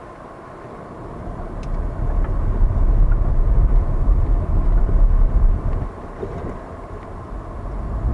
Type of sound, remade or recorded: remade